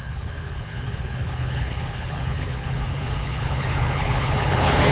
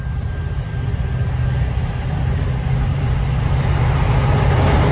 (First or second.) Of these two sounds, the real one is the second